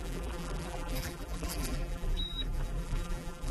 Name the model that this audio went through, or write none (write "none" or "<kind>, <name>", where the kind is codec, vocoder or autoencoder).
vocoder, BigVGAN v2